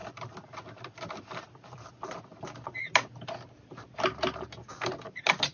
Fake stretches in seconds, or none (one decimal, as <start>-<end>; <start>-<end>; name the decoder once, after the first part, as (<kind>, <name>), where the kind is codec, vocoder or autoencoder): 0.0-2.3 (vocoder, BigVGAN v2); 5.0-5.5